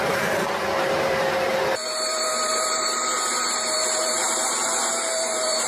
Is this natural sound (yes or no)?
no